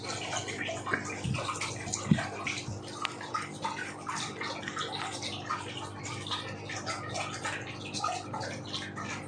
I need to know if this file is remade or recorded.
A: recorded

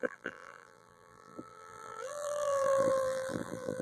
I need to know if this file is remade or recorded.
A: remade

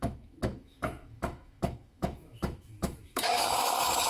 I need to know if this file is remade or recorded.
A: remade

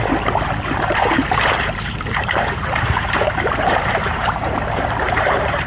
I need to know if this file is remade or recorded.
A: remade